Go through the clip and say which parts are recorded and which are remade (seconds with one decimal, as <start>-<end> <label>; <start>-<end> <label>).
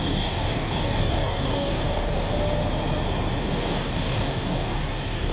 0.0-2.3 remade; 2.3-3.4 recorded; 3.4-5.3 remade